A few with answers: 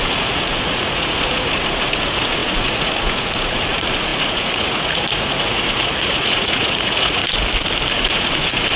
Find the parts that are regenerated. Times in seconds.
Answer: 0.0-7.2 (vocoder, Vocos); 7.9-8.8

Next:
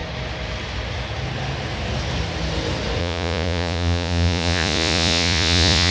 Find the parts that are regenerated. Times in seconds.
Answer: 3.0-5.9 (vocoder, Vocos)

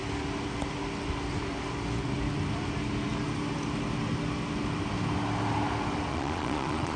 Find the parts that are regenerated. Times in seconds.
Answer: 6.1-7.0 (vocoder, Vocos)

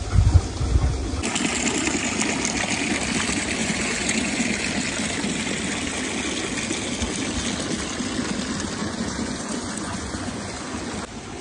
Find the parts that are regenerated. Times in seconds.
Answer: 3.6-4.4 (vocoder, Vocos); 8.8-10.6

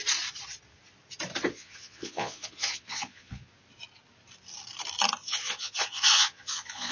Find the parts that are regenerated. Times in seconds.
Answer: 1.5-3.5 (vocoder, Vocos); 5.2-6.9

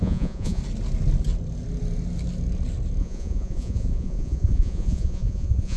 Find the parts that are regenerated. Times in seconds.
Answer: 0.0-0.6 (vocoder, Vocos); 3.0-5.8

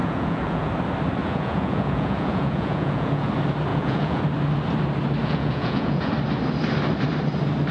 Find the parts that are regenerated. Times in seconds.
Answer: 0.0-0.7 (vocoder, Vocos); 1.2-3.3; 3.7-4.2; 5.2-6.1